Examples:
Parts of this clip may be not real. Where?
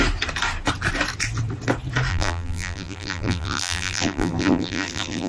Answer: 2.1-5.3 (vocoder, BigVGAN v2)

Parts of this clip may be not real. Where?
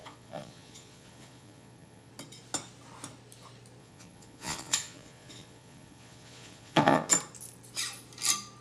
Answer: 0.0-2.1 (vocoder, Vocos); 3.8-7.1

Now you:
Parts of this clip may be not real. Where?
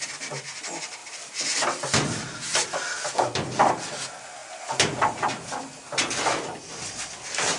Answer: 1.0-3.7 (vocoder, BigVGAN v2)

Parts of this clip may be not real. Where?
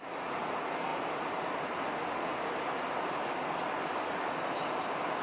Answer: 0.9-1.9 (vocoder, BigVGAN v2)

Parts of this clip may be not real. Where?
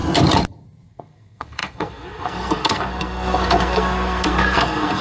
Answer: 0.9-5.0 (codec, SNAC)